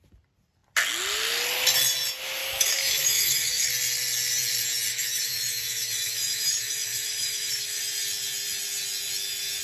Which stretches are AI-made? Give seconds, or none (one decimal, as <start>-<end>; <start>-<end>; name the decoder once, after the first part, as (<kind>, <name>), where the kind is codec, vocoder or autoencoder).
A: 2.4-3.7 (autoencoder, DAC-VAE); 4.9-7.8

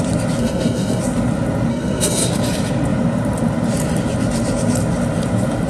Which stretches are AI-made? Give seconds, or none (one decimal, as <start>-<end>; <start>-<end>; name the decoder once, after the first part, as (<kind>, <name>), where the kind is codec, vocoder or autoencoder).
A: 0.4-1.0 (codec, SNAC); 1.7-2.3